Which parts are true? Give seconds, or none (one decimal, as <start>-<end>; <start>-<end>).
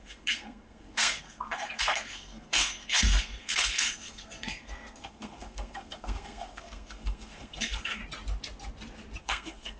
8.0-9.2